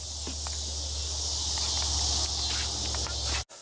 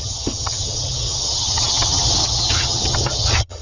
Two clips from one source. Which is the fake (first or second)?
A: second